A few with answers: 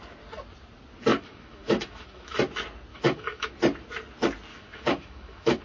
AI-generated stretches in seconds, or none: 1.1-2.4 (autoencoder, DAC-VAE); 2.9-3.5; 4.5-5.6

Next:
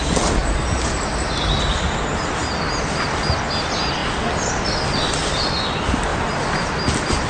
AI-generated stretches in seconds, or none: none

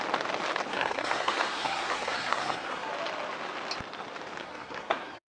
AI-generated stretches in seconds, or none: 0.7-2.9 (codec, SNAC); 4.4-5.3

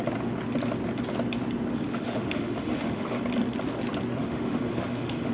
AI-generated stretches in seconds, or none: 1.9-3.2 (autoencoder, DAC-VAE); 4.2-5.3

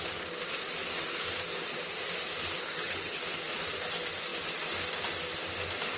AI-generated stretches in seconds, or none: 2.6-3.2 (codec, HILCodec)

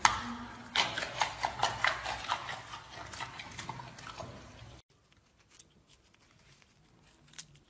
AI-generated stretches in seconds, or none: none

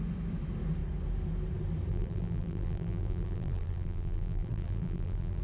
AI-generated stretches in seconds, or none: 1.9-5.4 (vocoder, BigVGAN v2)

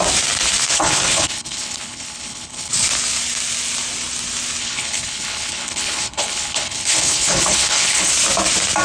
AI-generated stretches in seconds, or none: 0.7-2.7 (codec, HILCodec); 4.6-8.1